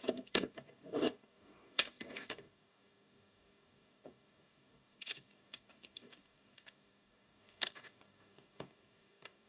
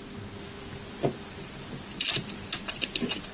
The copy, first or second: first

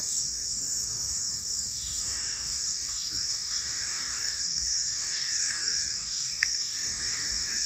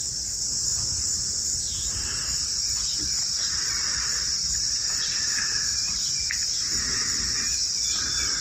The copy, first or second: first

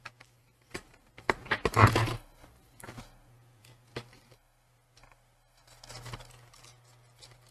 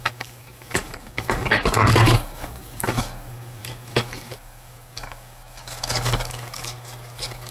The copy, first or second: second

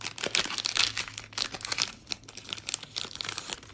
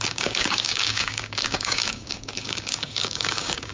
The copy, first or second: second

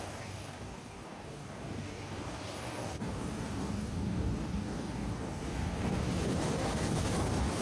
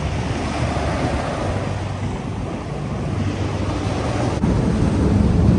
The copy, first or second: first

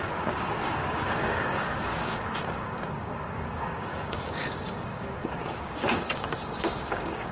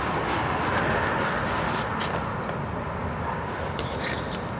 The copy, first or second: first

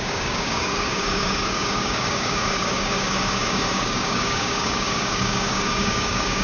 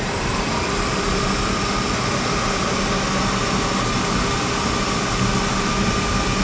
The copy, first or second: first